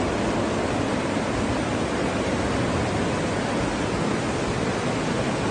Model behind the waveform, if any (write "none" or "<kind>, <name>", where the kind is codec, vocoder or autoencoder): none